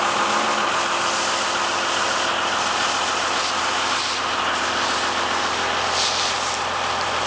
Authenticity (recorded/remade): recorded